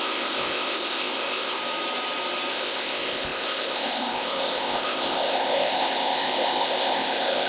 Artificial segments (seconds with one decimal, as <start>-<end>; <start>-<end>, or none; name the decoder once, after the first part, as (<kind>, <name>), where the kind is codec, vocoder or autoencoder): 0.0-1.6 (codec, ZipCodec); 2.5-7.5